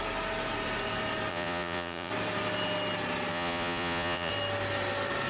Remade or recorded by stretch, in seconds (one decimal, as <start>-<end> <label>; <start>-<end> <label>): 0.0-1.3 recorded; 1.3-2.1 remade; 2.1-3.3 recorded; 3.3-4.3 remade; 4.3-5.3 recorded